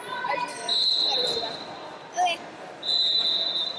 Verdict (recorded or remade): recorded